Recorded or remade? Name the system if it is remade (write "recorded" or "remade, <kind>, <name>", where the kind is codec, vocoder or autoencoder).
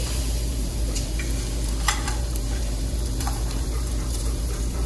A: remade, vocoder, BigVGAN v2